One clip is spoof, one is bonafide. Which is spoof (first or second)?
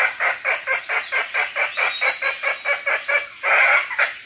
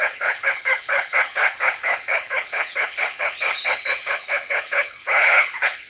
second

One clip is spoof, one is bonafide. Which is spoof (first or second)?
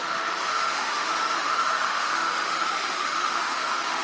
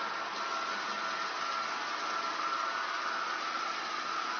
first